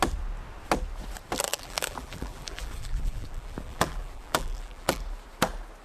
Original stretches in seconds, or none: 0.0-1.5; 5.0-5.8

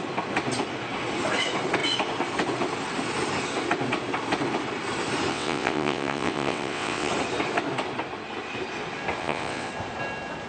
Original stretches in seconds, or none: 0.0-5.3; 7.1-9.2; 9.7-10.5

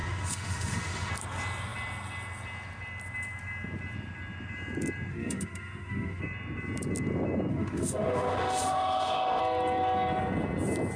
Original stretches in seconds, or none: 1.1-5.1; 6.2-7.5; 9.4-11.0

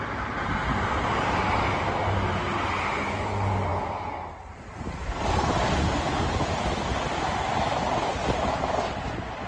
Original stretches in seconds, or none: 0.0-9.5

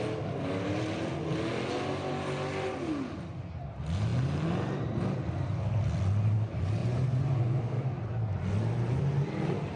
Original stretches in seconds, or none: 0.0-6.8; 7.6-9.8

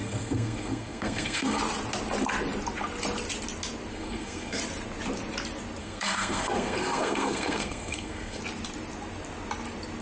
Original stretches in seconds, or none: 1.6-3.9; 4.6-5.8; 8.4-10.0